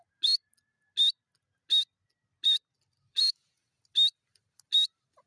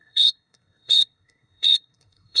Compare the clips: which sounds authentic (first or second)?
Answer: first